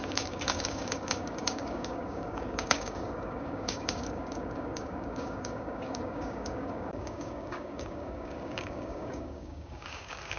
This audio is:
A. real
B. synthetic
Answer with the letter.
B